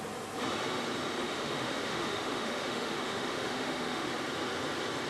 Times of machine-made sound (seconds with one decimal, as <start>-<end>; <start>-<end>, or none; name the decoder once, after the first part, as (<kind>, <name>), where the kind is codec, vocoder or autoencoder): 1.2-4.1 (autoencoder, DAC-VAE)